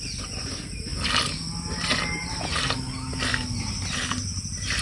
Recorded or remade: recorded